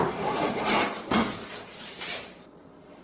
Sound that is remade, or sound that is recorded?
remade